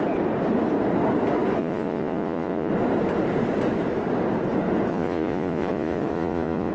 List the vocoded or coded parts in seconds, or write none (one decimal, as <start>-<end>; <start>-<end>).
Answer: 1.6-2.7; 4.9-6.7